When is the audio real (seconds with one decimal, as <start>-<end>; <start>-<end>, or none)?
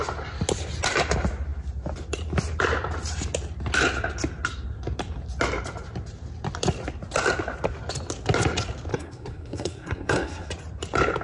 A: 0.0-8.9; 10.5-11.2